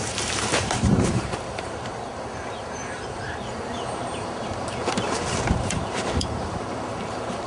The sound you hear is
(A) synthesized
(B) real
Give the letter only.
A